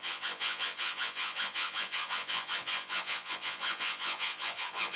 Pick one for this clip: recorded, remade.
remade